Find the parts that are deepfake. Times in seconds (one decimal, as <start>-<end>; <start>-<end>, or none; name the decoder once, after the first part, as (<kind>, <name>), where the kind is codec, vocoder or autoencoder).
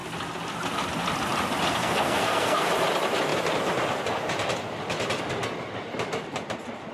1.7-2.7 (codec, SNAC)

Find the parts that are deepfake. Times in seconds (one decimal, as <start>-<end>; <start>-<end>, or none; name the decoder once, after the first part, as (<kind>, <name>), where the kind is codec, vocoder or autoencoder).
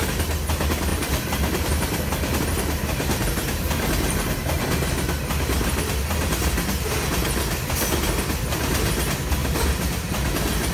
0.9-2.4 (vocoder, BigVGAN v2); 9.4-10.7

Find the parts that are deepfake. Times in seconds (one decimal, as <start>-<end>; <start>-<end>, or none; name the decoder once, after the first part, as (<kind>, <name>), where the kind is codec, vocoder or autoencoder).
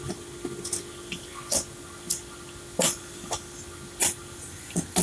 none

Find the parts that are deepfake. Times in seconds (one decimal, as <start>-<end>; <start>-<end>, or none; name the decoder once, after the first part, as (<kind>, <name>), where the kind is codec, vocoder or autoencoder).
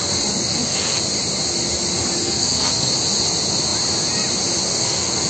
0.4-1.0 (codec, SNAC); 2.2-2.9; 4.7-5.3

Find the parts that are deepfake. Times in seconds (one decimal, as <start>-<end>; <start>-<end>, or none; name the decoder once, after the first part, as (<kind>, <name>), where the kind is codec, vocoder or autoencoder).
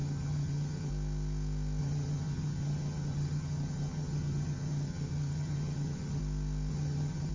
0.0-0.9 (vocoder, HiFi-GAN); 1.8-6.2; 6.7-7.3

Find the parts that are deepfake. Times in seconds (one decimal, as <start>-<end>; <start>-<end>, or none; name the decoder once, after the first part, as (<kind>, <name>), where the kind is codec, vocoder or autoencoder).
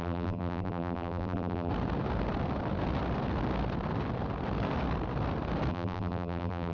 0.0-1.7 (vocoder, BigVGAN v2); 5.7-6.7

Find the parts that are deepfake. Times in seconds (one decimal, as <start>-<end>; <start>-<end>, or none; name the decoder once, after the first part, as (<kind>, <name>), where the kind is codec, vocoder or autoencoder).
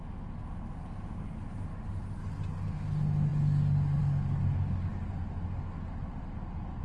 none